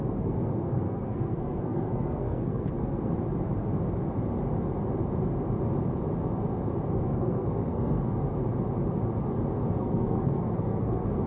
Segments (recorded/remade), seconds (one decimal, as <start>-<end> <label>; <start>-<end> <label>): 0.0-3.1 remade; 3.1-6.9 recorded; 6.9-8.2 remade; 8.2-9.8 recorded; 9.8-11.3 remade